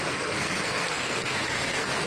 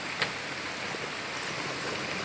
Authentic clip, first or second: second